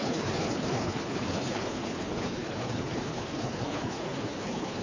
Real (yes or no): no